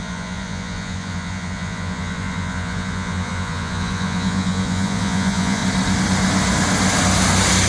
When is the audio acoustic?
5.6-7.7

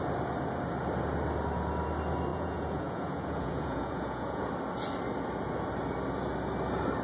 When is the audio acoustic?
0.0-2.3; 4.5-7.0

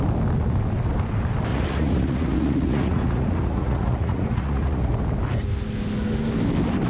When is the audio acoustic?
0.0-1.5; 4.9-6.9

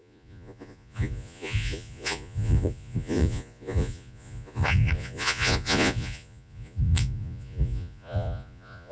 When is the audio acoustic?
none

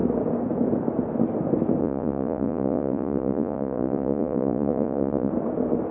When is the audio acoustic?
0.0-1.8; 5.3-5.9

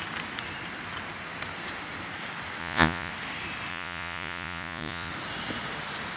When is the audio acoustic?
0.0-2.6; 3.1-3.7; 5.1-6.2